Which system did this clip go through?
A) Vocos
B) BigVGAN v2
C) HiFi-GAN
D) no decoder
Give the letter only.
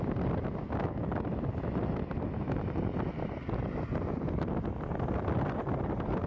D